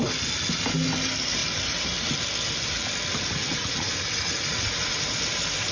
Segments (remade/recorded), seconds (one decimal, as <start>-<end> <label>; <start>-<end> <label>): 0.0-3.4 recorded; 3.4-5.1 remade; 5.1-5.7 recorded